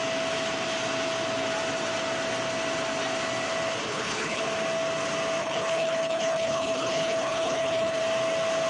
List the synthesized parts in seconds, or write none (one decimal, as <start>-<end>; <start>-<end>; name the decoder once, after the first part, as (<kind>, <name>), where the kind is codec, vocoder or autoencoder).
3.9-4.4 (codec, HILCodec); 5.4-8.0